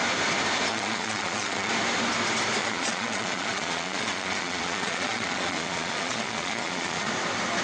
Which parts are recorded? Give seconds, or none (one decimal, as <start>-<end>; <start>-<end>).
0.0-0.7; 1.7-2.6; 7.1-7.6